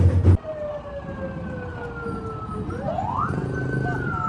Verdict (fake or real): real